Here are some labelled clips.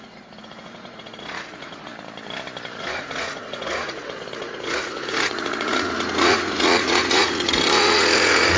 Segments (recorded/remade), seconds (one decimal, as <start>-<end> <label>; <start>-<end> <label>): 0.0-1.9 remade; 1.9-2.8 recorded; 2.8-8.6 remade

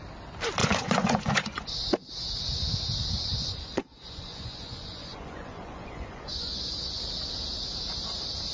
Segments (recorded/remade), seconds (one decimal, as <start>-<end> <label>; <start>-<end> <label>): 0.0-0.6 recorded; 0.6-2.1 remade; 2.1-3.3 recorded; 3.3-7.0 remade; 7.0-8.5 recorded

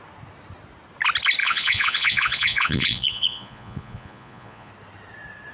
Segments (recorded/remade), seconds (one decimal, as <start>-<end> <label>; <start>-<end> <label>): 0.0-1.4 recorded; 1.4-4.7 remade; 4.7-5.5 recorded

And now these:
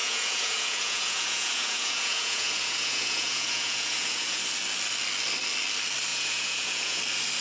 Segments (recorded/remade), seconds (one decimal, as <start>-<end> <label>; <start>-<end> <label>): 0.0-4.4 remade; 4.4-6.1 recorded; 6.1-7.0 remade; 7.0-7.4 recorded

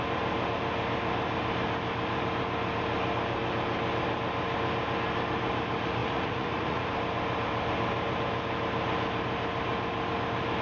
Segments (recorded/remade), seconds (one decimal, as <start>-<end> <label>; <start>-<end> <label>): 0.0-6.0 recorded; 6.0-6.9 remade; 6.9-10.6 recorded

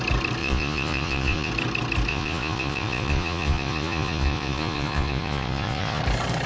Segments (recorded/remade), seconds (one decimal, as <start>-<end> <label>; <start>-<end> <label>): 0.0-0.4 recorded; 0.4-1.5 remade; 1.5-2.1 recorded; 2.1-6.0 remade; 6.0-6.5 recorded

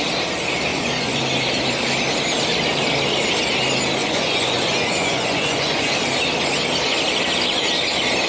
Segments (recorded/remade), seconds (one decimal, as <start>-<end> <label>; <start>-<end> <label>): 0.0-0.7 recorded; 0.7-1.2 remade; 1.2-4.0 recorded; 4.0-5.9 remade; 5.9-8.3 recorded

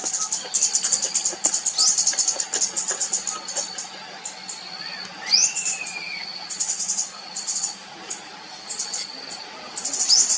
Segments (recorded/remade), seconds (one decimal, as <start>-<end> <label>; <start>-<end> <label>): 0.0-5.4 recorded; 5.4-7.6 remade; 7.6-10.4 recorded